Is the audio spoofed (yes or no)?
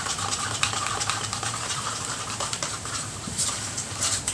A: yes